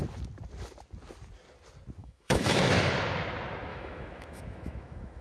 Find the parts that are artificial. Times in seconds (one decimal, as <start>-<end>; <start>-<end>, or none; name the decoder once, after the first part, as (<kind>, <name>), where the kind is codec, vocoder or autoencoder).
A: 2.0-2.6 (autoencoder, DAC-VAE); 3.7-5.2